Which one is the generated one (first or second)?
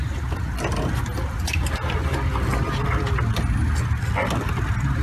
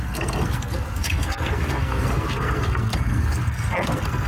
second